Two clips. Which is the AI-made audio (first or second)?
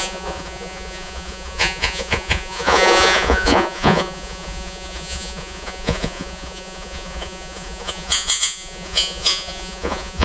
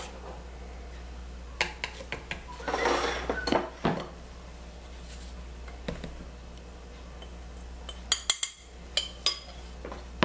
first